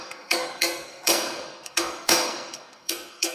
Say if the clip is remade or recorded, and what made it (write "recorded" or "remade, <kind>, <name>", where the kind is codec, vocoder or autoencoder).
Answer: remade, codec, SNAC